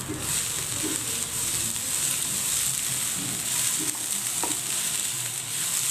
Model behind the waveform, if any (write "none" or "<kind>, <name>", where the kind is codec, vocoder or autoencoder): none